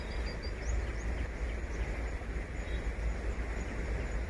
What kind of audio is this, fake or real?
real